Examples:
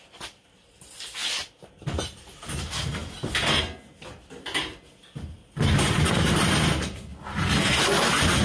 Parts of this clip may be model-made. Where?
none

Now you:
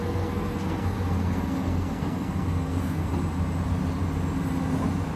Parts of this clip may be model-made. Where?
0.0-3.1 (codec, SNAC)

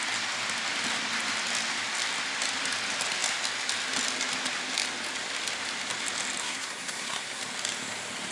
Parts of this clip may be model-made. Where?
6.4-7.4 (codec, SNAC)

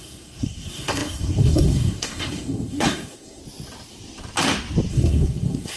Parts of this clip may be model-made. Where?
0.0-3.4 (codec, SNAC); 4.9-5.8

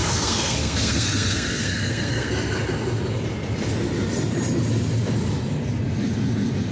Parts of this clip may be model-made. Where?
0.0-2.3 (codec, SNAC)

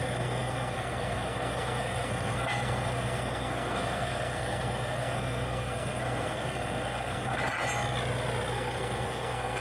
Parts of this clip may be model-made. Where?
0.0-7.3 (codec, SNAC); 8.5-9.6

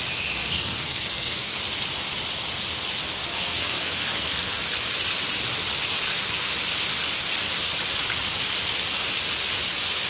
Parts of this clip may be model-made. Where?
0.4-1.6 (codec, SNAC); 3.2-4.6; 5.9-6.5